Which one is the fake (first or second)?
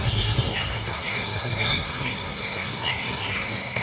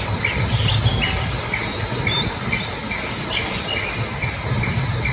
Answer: first